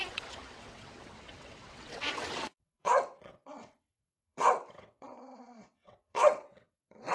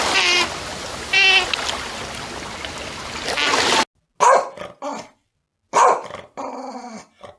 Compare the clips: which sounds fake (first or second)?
first